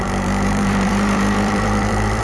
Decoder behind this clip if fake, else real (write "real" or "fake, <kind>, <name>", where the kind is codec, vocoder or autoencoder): fake, vocoder, BigVGAN v2